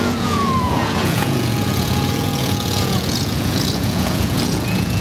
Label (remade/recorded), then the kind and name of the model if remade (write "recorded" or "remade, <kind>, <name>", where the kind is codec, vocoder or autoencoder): remade, vocoder, Vocos